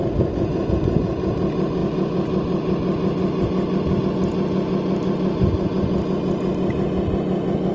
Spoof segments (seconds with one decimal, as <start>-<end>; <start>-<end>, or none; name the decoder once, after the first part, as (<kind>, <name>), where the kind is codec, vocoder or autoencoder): none